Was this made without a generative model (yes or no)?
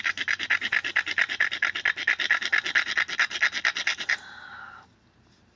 yes